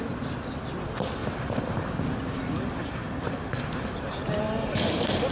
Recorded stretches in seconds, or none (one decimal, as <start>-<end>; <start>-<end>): 0.0-5.3